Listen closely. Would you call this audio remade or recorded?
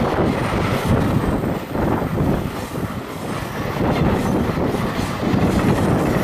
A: recorded